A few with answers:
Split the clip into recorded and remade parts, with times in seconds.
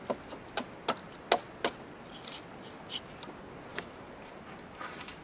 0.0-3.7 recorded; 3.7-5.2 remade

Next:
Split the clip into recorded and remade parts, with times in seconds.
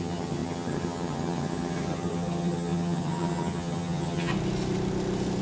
0.0-4.3 remade; 4.3-5.4 recorded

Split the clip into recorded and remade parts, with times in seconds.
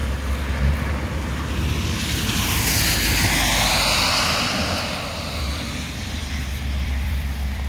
0.0-4.5 recorded; 4.5-7.7 remade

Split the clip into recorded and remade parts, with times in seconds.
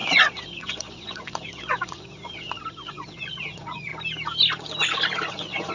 0.0-3.9 remade; 3.9-5.3 recorded; 5.3-5.7 remade